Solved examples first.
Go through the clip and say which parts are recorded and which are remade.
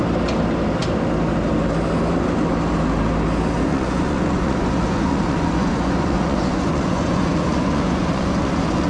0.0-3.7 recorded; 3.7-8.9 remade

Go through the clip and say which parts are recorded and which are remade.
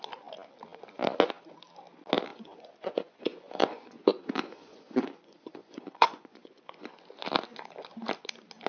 0.0-2.3 recorded; 2.3-7.0 remade; 7.0-8.7 recorded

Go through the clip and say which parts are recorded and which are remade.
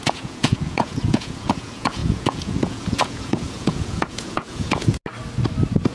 0.0-5.0 remade; 5.0-5.9 recorded